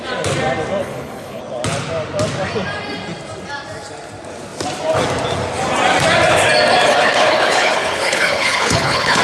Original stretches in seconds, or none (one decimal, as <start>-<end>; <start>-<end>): 0.0-0.8; 1.4-7.0